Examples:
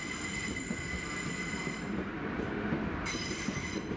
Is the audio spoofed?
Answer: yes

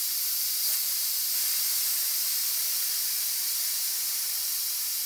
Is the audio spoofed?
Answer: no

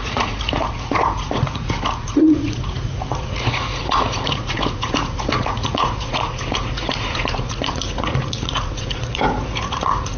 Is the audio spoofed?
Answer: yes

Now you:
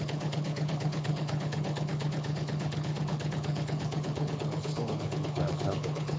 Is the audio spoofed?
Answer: yes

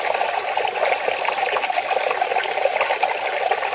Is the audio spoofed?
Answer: no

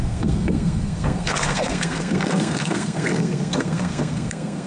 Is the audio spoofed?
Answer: yes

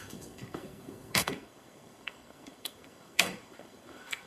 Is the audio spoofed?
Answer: yes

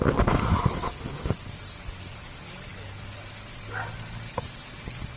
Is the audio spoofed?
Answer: no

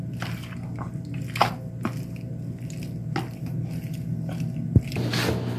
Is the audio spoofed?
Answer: no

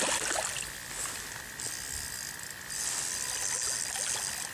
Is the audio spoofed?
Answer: no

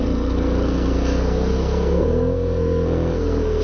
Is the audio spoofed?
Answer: yes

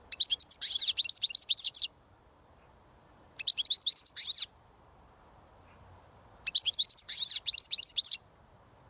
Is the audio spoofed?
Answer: yes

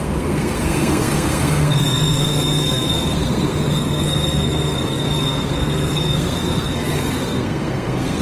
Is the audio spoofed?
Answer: yes